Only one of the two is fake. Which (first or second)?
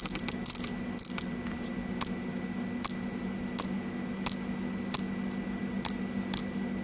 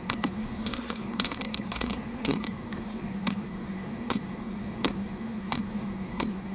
second